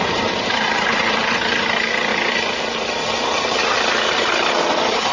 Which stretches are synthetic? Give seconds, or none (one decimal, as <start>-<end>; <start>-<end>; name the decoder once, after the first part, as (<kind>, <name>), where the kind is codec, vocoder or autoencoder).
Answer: 0.0-2.1 (vocoder, BigVGAN v2); 2.6-3.6; 4.1-5.1

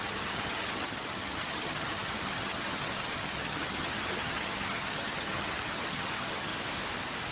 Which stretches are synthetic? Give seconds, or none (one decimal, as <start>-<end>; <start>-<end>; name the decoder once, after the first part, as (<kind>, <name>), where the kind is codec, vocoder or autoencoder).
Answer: 0.0-6.5 (vocoder, HiFi-GAN)

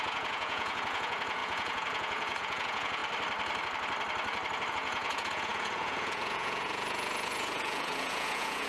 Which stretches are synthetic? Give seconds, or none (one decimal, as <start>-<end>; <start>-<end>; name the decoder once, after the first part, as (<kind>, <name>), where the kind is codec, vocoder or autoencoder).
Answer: 0.0-3.0 (vocoder, Vocos); 4.7-8.7

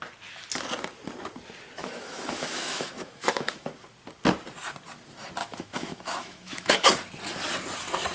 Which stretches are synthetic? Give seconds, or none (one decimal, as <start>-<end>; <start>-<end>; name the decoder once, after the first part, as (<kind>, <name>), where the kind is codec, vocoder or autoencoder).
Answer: 1.8-3.7 (autoencoder, DAC-VAE); 5.4-6.9

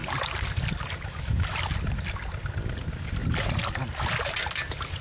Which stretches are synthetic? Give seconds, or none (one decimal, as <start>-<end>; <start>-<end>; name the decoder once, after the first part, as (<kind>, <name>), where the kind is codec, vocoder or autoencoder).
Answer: none

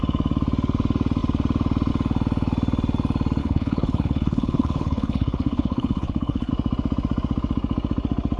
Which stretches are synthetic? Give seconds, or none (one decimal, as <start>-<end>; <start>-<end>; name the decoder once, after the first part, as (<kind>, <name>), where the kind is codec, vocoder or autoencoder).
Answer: 3.4-6.5 (codec, HILCodec)

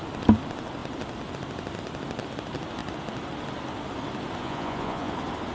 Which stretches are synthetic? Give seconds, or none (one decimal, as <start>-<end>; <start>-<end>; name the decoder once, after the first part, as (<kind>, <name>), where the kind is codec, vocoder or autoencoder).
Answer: 4.4-5.1 (vocoder, Vocos)

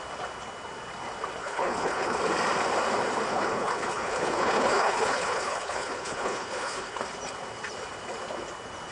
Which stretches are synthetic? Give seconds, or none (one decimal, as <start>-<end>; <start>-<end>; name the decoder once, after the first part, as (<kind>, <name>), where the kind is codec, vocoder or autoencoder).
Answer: 1.4-2.2 (codec, HILCodec); 3.3-7.0